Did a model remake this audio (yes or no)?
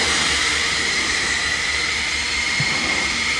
yes